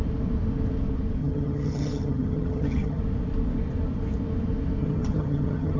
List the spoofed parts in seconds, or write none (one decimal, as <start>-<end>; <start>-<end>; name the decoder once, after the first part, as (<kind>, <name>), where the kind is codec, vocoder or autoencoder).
1.2-3.0 (vocoder, HiFi-GAN); 4.8-5.8